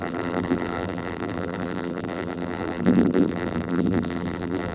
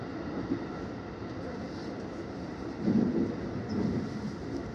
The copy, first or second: first